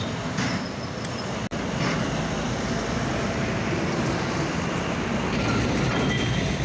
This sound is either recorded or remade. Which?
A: recorded